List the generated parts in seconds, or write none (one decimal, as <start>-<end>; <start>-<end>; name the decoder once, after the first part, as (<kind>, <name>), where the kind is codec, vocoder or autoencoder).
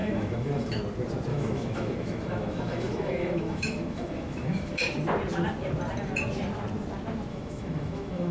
0.0-0.8 (autoencoder, DAC-VAE); 1.3-4.8; 7.3-8.3